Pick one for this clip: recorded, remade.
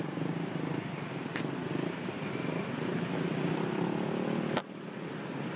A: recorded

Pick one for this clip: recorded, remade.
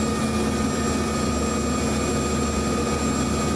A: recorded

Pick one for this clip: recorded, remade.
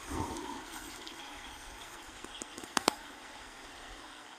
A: remade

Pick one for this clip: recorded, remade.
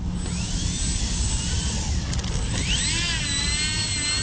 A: recorded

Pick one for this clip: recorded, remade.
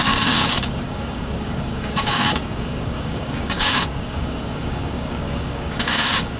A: remade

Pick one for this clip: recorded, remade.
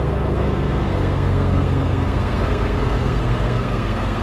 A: remade